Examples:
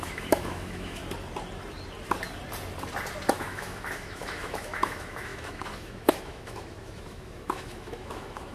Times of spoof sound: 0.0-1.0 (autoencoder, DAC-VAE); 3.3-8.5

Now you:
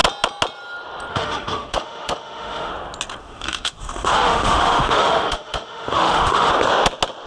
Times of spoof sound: 1.1-2.7 (autoencoder, DAC-VAE); 3.2-6.5

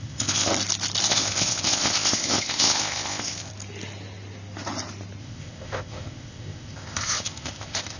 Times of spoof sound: 0.0-0.5 (codec, ZipCodec); 1.1-3.5; 5.2-8.0